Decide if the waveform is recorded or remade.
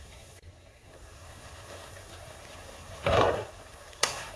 remade